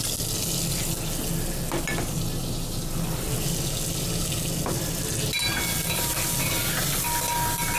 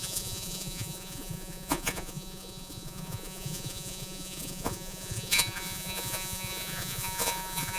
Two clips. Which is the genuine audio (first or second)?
first